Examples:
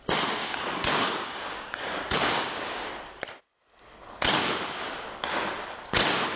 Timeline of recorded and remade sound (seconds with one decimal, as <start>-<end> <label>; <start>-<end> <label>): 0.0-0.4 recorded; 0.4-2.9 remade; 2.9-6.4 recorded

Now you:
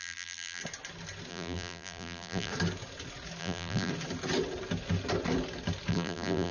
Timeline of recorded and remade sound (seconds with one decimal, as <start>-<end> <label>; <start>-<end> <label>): 0.0-0.6 remade; 0.6-1.3 recorded; 1.3-2.5 remade; 2.5-3.4 recorded; 3.4-3.9 remade; 3.9-5.9 recorded; 5.9-6.5 remade

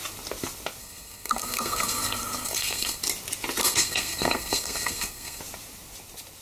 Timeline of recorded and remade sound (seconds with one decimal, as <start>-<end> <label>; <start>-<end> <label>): 0.0-0.8 recorded; 0.8-3.0 remade; 3.0-3.6 recorded; 3.6-5.4 remade; 5.4-6.4 recorded

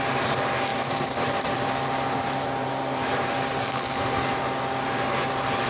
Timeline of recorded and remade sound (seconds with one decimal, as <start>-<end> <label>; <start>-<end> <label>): 0.0-0.7 recorded; 0.7-3.7 remade; 3.7-5.7 recorded

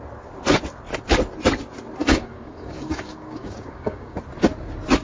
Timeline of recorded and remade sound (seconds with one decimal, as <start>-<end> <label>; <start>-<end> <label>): 0.0-2.0 recorded; 2.0-4.2 remade; 4.2-5.0 recorded

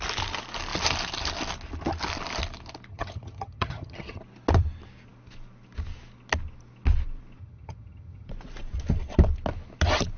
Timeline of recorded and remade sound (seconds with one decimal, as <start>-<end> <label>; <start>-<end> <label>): 0.0-2.9 recorded; 2.9-4.2 remade; 4.2-7.4 recorded; 7.4-8.3 remade; 8.3-10.2 recorded